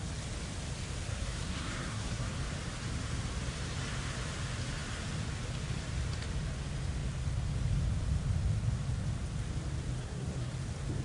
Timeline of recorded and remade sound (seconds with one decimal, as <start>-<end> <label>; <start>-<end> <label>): 0.0-1.1 recorded; 1.1-2.3 remade; 2.3-10.0 recorded; 10.0-10.5 remade; 10.5-11.0 recorded